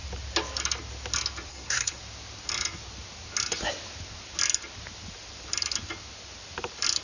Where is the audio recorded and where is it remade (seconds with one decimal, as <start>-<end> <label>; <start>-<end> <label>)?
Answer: 0.0-1.5 recorded; 1.5-2.0 remade; 2.0-7.0 recorded